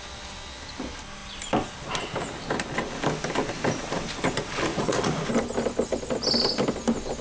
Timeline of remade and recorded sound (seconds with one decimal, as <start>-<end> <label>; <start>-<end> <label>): 0.0-4.7 recorded; 4.7-5.3 remade; 5.3-7.2 recorded